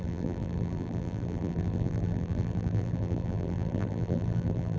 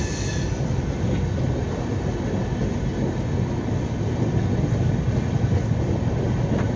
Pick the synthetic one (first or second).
first